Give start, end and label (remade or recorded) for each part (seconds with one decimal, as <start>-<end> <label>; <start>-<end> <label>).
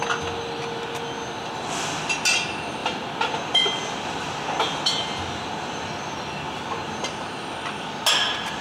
0.0-8.6 recorded